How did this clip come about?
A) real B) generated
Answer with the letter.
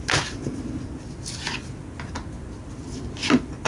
A